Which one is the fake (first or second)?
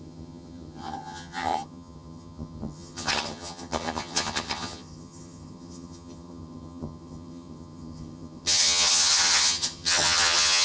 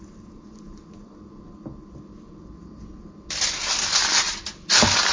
first